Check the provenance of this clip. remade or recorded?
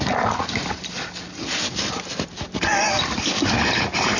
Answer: recorded